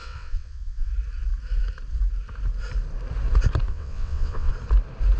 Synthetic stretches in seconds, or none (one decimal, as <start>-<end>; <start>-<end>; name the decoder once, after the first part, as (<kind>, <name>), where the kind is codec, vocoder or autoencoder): 0.0-0.9 (vocoder, WaveNeXt); 3.7-4.5